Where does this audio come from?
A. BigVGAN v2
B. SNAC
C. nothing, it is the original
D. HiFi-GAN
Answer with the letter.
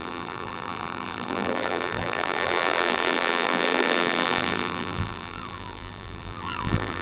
A